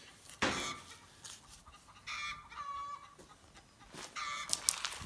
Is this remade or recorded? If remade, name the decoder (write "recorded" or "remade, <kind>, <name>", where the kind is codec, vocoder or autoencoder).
recorded